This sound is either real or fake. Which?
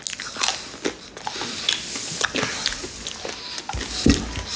real